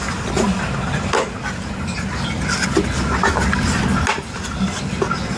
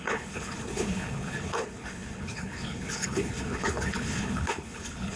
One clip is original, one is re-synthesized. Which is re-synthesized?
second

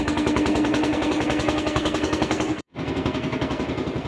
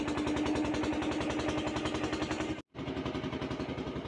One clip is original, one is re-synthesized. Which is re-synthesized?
first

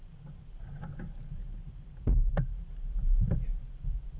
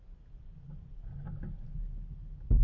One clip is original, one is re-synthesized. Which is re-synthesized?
first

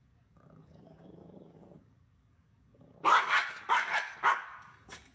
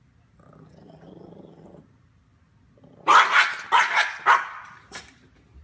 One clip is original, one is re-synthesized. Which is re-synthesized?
first